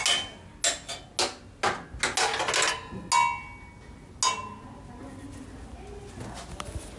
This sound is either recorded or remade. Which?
recorded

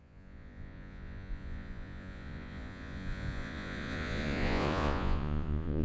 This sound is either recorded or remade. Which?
remade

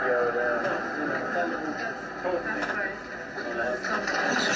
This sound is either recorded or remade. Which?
recorded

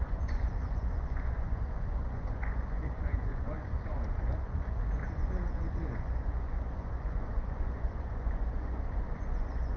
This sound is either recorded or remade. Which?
remade